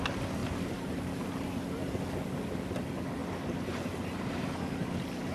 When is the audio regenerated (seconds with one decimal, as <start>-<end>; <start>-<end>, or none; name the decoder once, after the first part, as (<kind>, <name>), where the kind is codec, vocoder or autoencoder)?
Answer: 0.4-1.4 (vocoder, BigVGAN v2)